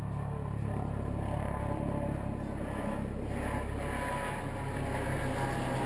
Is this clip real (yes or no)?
yes